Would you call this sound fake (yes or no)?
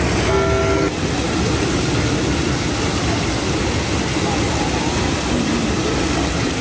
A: no